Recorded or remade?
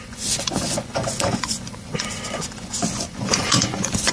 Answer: remade